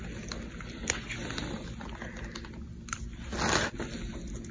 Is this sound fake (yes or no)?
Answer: no